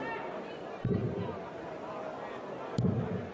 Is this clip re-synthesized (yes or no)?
no